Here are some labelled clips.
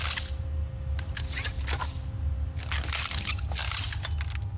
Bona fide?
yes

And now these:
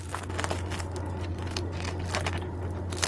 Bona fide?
yes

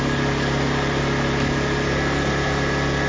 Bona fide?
yes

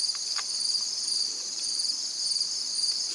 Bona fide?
no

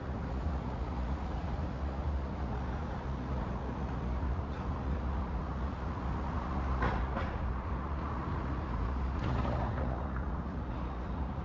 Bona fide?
no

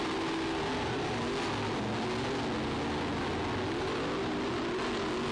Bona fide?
yes